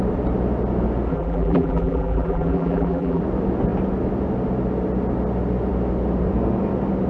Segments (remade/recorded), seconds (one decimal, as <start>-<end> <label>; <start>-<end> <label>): 0.0-1.1 recorded; 1.1-3.2 remade; 3.2-7.1 recorded